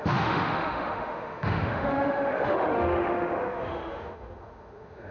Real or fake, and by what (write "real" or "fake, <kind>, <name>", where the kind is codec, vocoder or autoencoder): fake, autoencoder, DAC-VAE